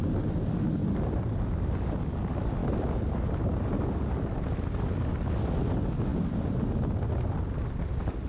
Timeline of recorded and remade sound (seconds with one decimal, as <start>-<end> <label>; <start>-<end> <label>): 0.0-0.8 recorded; 0.8-1.7 remade; 1.7-8.3 recorded